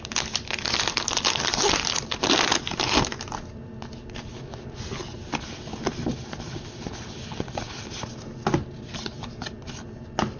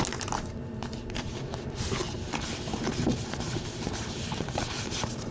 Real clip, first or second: first